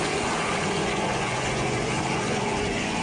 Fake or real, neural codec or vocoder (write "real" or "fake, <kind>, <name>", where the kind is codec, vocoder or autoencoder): fake, vocoder, Vocos